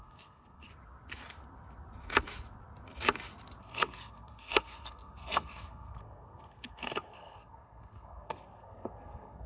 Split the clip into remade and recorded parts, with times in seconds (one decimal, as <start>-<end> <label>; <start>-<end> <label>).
0.0-0.7 remade; 0.7-3.6 recorded; 3.6-9.5 remade